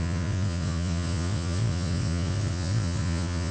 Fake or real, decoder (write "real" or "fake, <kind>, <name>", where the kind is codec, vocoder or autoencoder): fake, vocoder, Vocos